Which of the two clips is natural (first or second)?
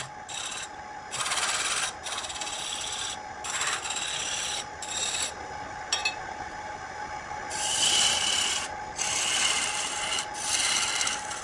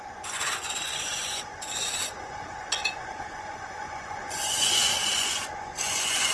first